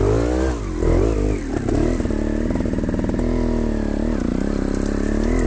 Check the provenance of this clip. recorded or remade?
recorded